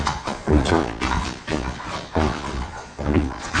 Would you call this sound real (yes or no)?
no